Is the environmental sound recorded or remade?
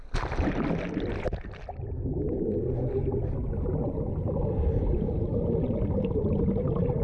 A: recorded